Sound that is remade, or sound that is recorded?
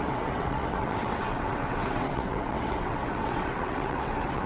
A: remade